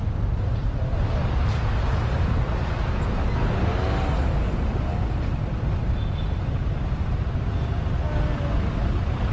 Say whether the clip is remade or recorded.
recorded